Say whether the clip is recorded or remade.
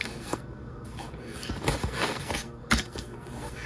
remade